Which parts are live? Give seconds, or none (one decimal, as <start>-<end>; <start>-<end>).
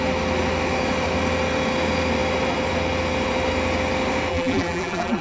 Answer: 0.0-4.3